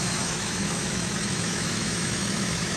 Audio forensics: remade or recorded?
remade